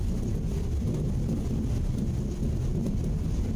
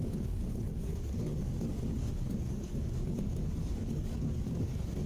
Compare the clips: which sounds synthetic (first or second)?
second